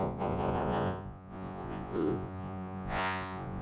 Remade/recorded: remade